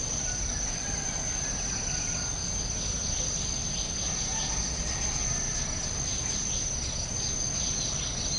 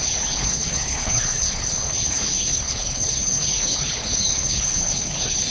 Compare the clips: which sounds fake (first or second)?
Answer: second